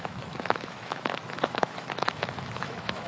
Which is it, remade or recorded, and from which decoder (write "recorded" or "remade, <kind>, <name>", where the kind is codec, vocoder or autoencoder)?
remade, autoencoder, DAC-VAE